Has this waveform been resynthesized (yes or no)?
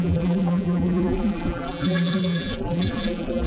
yes